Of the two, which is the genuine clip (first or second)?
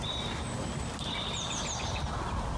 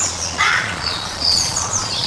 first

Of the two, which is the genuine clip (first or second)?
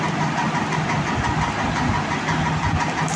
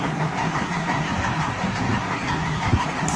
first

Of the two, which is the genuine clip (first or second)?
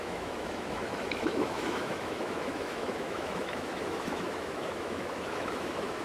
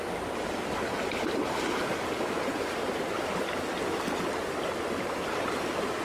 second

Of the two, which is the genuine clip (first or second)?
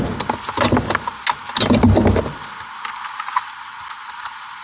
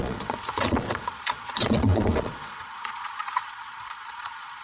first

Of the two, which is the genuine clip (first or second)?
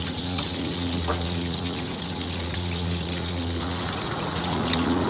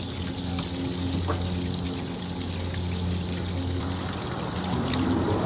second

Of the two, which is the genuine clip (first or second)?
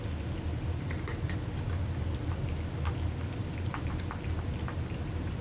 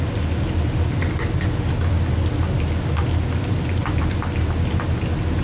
second